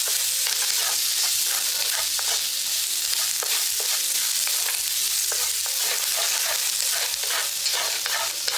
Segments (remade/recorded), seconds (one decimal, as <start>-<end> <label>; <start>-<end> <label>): 0.0-8.6 recorded